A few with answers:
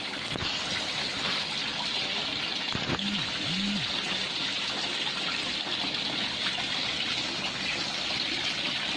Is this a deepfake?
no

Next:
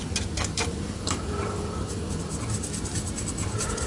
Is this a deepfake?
yes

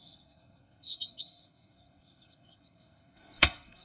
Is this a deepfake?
yes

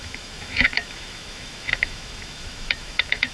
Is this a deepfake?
yes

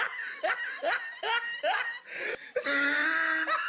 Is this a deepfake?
no